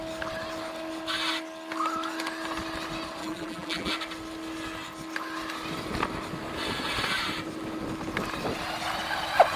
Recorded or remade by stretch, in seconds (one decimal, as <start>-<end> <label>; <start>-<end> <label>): 0.0-3.2 recorded; 3.2-3.9 remade; 3.9-9.6 recorded